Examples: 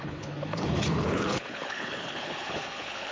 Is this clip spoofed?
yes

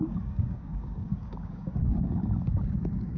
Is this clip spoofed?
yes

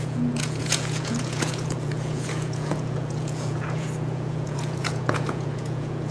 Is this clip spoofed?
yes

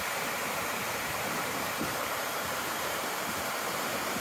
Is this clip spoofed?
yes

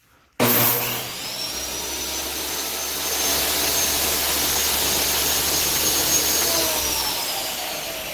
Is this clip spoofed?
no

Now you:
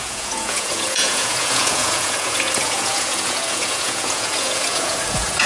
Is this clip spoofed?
yes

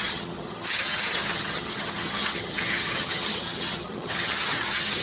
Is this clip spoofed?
yes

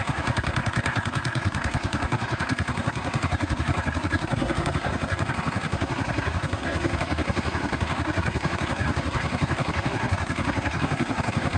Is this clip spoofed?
yes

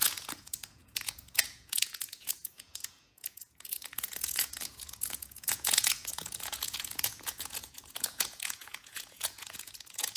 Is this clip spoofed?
yes